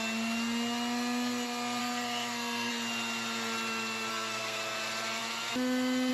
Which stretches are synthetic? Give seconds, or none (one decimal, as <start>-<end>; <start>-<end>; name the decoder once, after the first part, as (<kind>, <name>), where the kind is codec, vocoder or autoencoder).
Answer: 1.8-2.7 (codec, SNAC); 4.1-4.6